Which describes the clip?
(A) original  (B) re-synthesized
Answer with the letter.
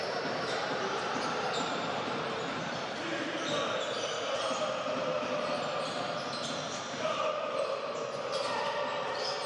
B